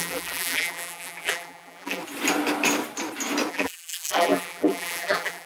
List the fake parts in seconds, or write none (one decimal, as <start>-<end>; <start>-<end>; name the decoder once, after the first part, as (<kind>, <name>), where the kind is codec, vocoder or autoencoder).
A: 0.0-2.0 (vocoder, BigVGAN v2); 3.5-5.5